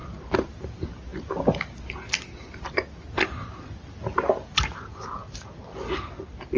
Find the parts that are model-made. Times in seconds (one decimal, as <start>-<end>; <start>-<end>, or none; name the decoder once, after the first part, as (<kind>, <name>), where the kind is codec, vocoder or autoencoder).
0.0-0.5 (vocoder, BigVGAN v2)